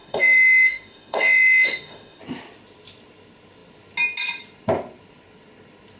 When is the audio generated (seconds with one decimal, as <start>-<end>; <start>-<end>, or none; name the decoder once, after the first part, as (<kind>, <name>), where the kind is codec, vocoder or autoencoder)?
0.0-2.2 (autoencoder, DAC-VAE)